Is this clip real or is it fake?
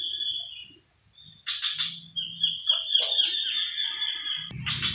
real